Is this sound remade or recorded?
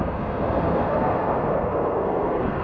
remade